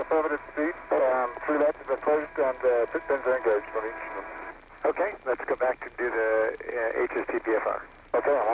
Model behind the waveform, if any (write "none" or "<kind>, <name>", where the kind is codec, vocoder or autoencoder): none